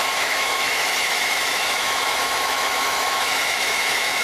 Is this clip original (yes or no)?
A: no